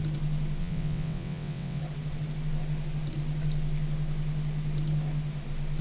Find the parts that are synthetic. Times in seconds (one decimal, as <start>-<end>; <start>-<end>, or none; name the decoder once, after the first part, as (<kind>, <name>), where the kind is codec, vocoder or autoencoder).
0.6-1.8 (vocoder, WaveNeXt)